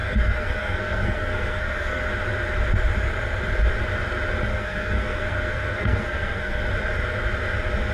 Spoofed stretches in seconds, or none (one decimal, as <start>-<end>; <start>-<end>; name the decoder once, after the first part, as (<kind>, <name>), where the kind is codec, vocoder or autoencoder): 0.0-2.0 (codec, SNAC); 4.5-6.6